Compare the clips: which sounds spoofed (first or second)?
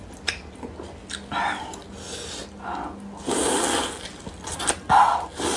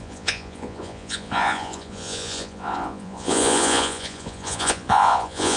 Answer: second